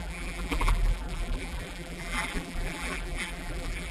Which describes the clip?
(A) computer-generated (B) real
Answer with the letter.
A